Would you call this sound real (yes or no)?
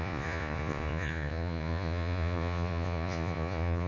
no